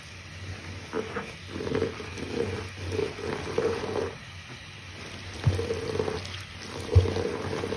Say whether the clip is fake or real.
real